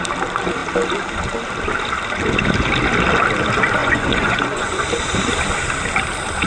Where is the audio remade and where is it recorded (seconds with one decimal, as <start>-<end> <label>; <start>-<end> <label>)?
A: 0.0-3.8 recorded; 3.8-4.8 remade; 4.8-6.5 recorded